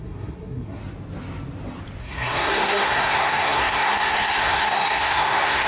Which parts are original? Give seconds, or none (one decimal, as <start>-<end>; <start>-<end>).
0.8-2.0